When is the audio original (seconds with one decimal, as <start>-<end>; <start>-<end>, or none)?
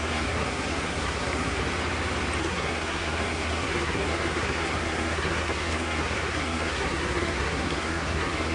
1.6-2.4